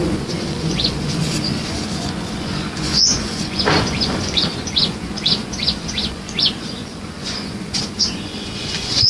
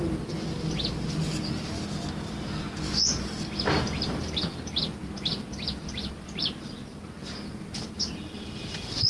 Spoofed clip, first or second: first